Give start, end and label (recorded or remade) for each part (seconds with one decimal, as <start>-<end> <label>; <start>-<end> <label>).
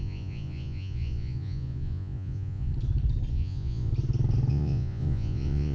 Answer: 0.0-2.7 remade; 2.7-3.3 recorded; 3.3-3.9 remade; 3.9-4.5 recorded; 4.5-5.7 remade